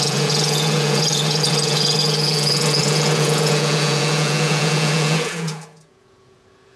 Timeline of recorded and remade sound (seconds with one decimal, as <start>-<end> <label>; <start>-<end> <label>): 0.0-6.8 remade